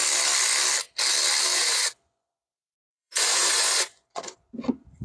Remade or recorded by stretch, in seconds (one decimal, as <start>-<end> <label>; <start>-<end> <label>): 0.0-1.5 recorded; 1.5-4.5 remade; 4.5-5.0 recorded